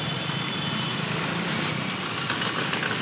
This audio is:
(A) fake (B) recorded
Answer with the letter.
B